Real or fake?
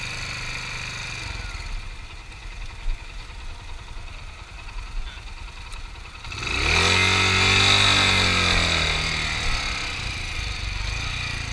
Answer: real